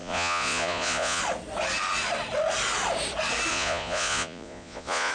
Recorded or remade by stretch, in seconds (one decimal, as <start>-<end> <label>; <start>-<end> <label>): 0.0-1.2 remade; 1.2-3.5 recorded; 3.5-5.1 remade